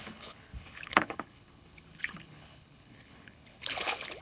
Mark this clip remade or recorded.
remade